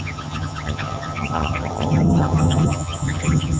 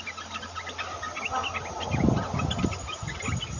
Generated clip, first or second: first